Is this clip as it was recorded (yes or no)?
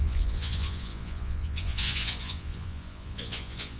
no